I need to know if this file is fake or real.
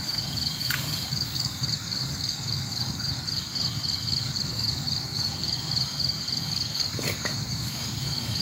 fake